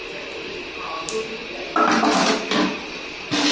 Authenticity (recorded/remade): recorded